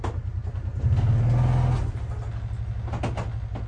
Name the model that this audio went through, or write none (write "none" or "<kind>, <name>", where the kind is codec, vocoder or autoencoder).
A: none